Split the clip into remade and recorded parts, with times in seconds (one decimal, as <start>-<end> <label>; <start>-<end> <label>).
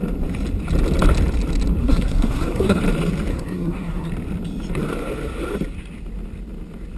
0.0-1.8 recorded; 1.8-2.8 remade; 2.8-3.3 recorded; 3.3-4.1 remade; 4.1-7.0 recorded